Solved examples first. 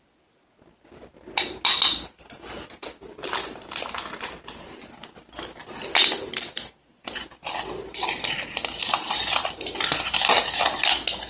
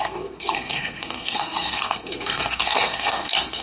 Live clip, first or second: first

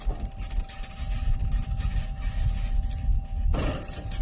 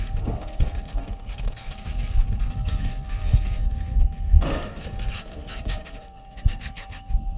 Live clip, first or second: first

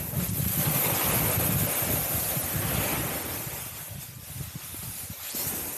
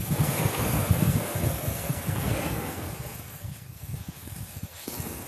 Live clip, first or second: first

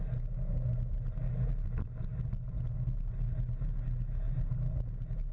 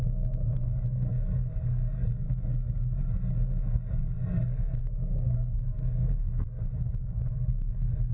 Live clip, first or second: first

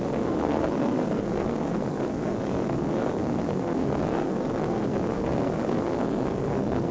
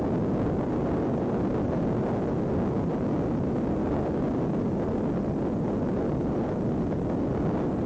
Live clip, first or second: second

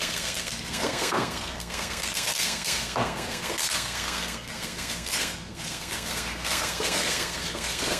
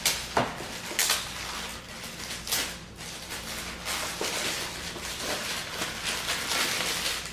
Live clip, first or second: second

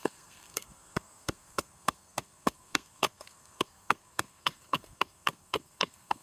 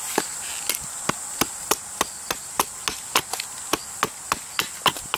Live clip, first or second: second